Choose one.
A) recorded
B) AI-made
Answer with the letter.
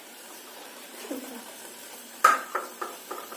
B